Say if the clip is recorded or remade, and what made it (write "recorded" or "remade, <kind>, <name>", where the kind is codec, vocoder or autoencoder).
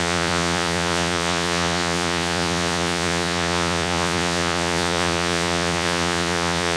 remade, vocoder, Vocos